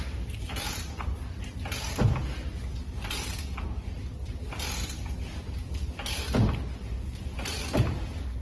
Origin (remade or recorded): recorded